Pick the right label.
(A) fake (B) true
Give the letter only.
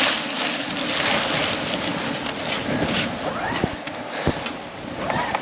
B